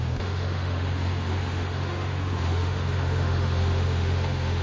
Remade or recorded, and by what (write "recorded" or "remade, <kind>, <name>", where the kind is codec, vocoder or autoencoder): remade, autoencoder, DAC-VAE